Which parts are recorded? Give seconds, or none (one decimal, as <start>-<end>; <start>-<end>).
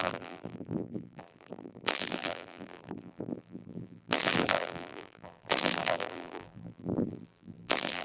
none